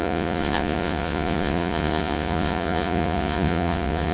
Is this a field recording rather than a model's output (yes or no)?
no